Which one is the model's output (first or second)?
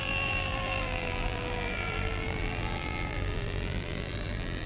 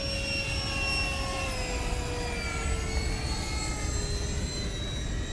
first